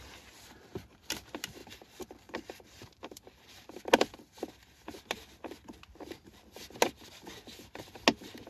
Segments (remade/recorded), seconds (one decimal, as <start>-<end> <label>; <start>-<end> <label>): 0.0-1.6 recorded; 1.6-3.8 remade; 3.8-8.5 recorded